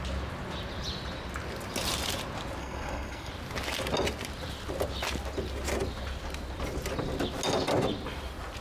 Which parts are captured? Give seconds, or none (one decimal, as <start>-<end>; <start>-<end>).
0.0-2.6; 3.3-8.6

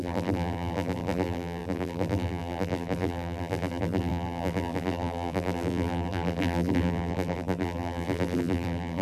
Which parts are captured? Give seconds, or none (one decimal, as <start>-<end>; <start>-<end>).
none